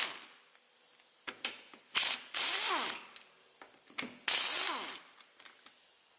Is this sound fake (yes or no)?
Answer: no